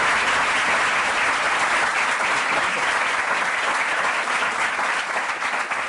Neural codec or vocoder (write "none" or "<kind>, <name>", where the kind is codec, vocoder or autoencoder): none